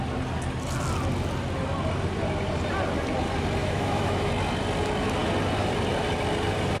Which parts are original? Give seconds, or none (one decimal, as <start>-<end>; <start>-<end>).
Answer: 0.0-3.6; 4.3-6.8